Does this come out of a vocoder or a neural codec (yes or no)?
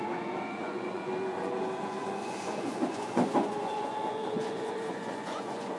yes